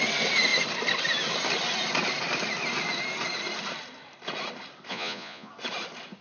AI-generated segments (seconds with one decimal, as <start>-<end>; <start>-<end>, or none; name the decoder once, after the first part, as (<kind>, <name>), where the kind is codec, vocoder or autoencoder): 4.9-5.5 (vocoder, Vocos)